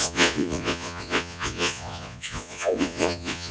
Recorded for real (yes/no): no